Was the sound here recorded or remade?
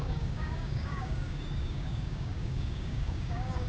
remade